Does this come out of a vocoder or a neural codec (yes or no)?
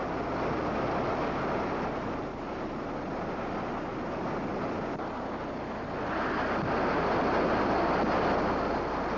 no